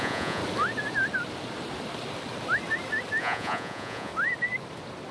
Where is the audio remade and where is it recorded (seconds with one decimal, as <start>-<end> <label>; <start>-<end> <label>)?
0.0-0.4 remade; 0.4-3.2 recorded; 3.2-4.1 remade; 4.1-5.1 recorded